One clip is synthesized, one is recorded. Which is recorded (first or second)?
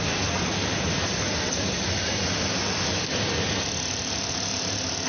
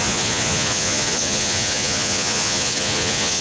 first